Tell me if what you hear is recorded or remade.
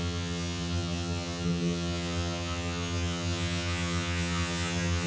remade